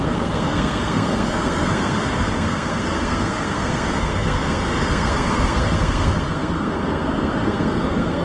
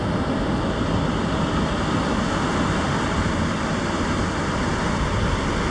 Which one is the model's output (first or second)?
first